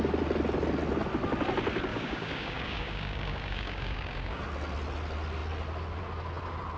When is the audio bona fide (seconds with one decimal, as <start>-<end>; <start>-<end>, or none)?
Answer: 0.0-1.9; 4.4-6.8